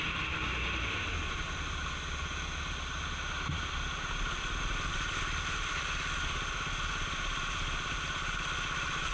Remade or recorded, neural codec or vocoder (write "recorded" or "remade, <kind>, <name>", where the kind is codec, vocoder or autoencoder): recorded